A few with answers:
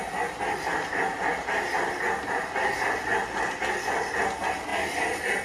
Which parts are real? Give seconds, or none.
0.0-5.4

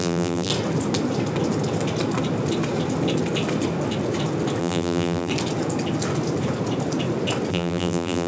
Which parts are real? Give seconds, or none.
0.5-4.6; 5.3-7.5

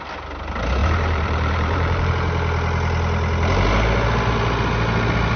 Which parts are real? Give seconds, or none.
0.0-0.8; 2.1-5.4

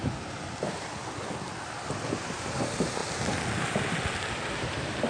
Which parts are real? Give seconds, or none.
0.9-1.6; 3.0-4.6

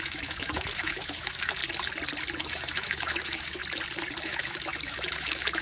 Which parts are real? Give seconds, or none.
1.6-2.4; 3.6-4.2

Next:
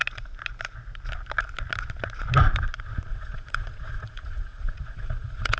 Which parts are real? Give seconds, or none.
0.0-3.1

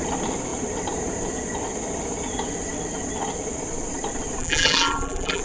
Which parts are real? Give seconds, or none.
0.0-4.4